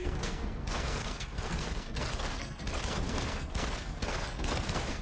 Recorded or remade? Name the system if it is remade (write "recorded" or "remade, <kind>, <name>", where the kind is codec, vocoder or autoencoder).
remade, codec, SNAC